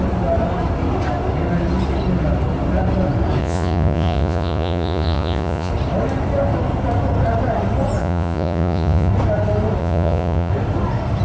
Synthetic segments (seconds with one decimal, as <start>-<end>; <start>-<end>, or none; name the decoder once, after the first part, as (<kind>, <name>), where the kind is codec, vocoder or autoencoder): 3.4-5.7 (vocoder, Vocos); 8.0-9.1; 9.8-10.5